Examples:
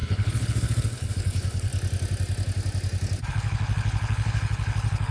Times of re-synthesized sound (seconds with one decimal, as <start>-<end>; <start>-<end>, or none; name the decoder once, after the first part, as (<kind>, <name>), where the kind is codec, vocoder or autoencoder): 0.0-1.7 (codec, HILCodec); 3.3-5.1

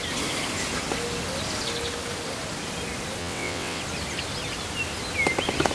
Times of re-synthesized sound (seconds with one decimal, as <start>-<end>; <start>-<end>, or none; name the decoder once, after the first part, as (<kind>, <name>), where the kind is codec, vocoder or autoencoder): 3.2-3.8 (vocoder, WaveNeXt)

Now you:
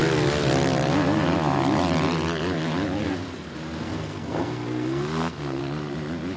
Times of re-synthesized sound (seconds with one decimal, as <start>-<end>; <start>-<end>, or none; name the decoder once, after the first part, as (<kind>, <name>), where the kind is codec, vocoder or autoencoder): 3.8-5.6 (codec, SNAC)

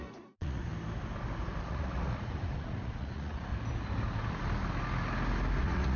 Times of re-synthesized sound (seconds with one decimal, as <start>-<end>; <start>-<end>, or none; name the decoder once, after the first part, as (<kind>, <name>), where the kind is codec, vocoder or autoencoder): 0.0-0.7 (vocoder, Vocos); 1.6-3.5; 5.6-6.0

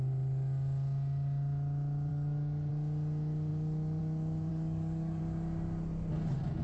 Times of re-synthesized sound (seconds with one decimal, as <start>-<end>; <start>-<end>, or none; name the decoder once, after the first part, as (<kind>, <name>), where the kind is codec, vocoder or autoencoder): 2.1-2.7 (codec, DAC); 4.5-5.2